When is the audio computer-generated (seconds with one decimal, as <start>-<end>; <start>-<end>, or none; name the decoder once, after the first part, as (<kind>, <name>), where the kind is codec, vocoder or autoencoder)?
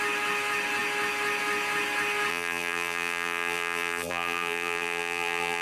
2.3-5.6 (vocoder, BigVGAN v2)